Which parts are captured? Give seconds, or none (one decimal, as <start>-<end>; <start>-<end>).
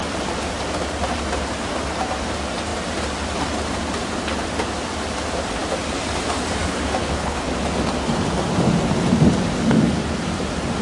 0.0-7.0; 7.5-10.8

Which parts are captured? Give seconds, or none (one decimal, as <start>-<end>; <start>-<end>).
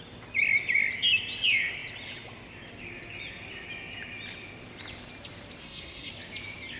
0.0-5.6; 6.1-6.8